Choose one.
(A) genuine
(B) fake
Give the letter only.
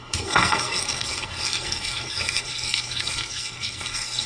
B